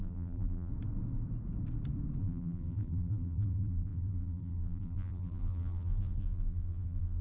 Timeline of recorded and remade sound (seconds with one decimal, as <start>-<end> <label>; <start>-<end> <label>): 0.0-0.7 remade; 0.7-2.2 recorded; 2.2-7.2 remade